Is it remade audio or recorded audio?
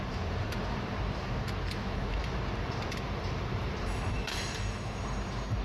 remade